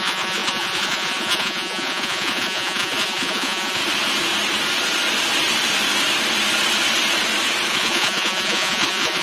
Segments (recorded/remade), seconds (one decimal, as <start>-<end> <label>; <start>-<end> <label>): 0.0-3.8 remade; 3.8-7.7 recorded; 7.7-9.2 remade